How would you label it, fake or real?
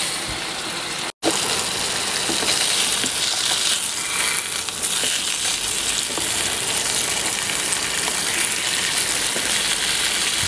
real